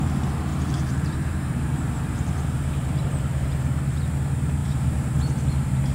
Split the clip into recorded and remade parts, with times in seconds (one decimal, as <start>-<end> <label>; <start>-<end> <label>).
0.0-0.5 recorded; 0.5-4.0 remade; 4.0-4.6 recorded; 4.6-5.2 remade; 5.2-5.9 recorded